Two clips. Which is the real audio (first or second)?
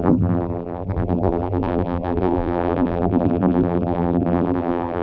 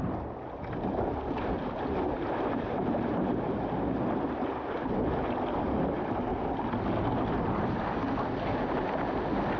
second